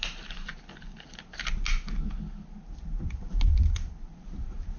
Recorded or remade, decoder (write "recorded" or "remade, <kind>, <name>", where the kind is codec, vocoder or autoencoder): recorded